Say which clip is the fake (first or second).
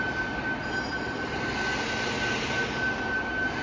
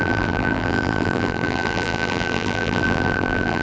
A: second